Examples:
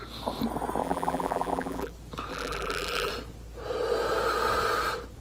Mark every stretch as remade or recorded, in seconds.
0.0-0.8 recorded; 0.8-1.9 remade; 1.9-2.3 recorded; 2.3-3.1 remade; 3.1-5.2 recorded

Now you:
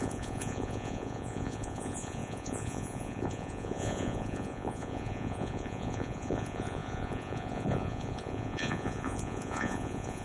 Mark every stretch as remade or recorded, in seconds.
0.0-10.2 remade

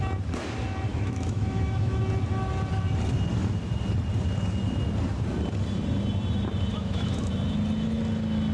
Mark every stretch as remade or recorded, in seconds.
0.0-0.9 recorded; 0.9-2.0 remade; 2.0-6.7 recorded; 6.7-7.3 remade; 7.3-8.5 recorded

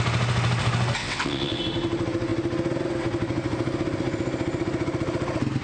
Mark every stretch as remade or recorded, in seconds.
0.0-1.0 recorded; 1.0-1.6 remade; 1.6-5.6 recorded

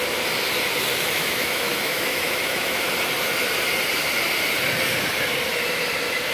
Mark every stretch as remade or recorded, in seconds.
0.0-0.9 recorded; 0.9-2.9 remade; 2.9-6.3 recorded

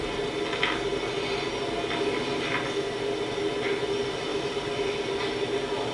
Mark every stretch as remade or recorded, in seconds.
0.0-4.3 recorded; 4.3-4.9 remade; 4.9-5.9 recorded

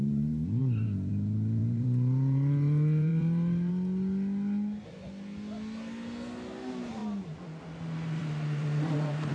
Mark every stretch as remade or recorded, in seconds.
0.0-0.6 recorded; 0.6-1.1 remade; 1.1-1.6 recorded; 1.6-3.7 remade; 3.7-8.2 recorded; 8.2-9.3 remade